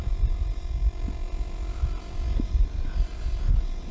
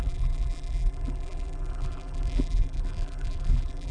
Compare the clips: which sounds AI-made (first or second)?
second